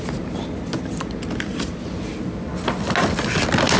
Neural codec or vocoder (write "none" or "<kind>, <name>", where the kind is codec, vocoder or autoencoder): none